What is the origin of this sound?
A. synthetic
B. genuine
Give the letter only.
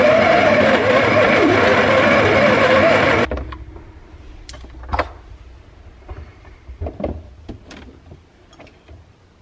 B